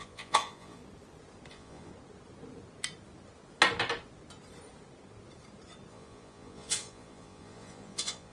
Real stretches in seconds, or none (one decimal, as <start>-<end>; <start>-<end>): 0.8-1.5; 1.9-5.9